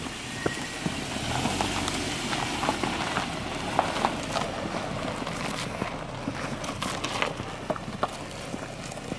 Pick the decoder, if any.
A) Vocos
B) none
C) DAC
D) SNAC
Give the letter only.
B